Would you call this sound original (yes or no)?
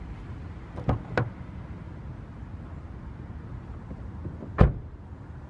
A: yes